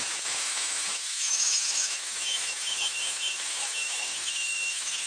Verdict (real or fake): fake